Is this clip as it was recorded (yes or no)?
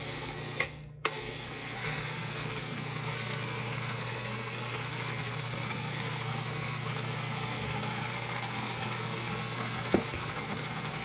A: no